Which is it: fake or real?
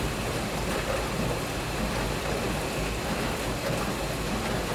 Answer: real